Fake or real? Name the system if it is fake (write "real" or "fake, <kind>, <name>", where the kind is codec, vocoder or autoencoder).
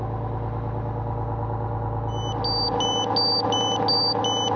real